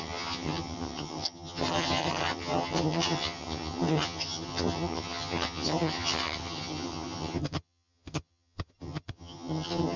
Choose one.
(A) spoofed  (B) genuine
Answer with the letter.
A